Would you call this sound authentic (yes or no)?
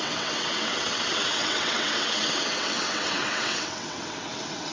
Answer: no